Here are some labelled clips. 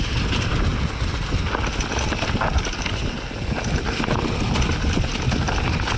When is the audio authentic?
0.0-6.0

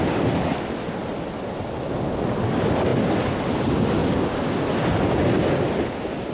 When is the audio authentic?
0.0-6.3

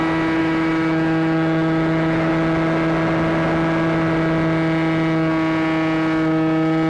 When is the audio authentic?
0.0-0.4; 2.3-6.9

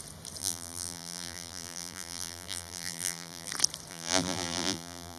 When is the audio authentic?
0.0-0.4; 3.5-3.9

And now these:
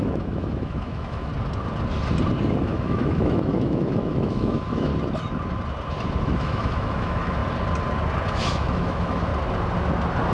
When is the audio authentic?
1.3-2.6; 4.9-6.2; 7.4-8.3; 9.3-10.3